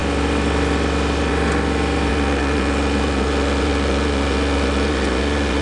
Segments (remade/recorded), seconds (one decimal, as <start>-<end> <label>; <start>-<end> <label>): 0.0-2.1 recorded; 2.1-5.6 remade